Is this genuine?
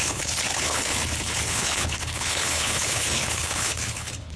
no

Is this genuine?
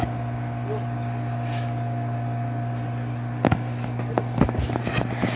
yes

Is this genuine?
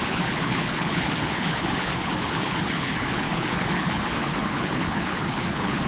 no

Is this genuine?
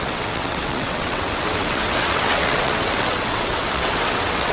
no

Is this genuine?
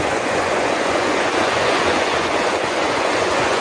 no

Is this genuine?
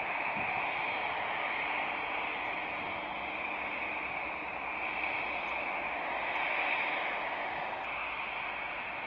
yes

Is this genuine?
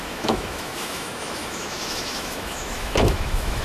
no